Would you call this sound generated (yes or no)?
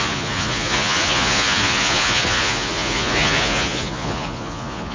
yes